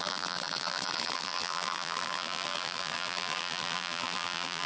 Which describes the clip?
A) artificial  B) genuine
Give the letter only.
A